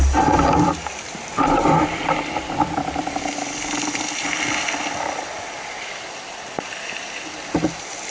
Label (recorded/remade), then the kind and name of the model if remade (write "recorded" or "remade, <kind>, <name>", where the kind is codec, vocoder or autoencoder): remade, vocoder, BigVGAN v2